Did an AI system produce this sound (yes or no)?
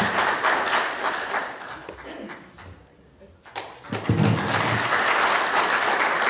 no